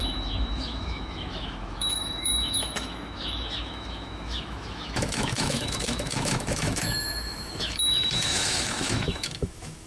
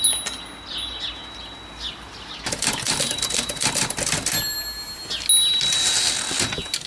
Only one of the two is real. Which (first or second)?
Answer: second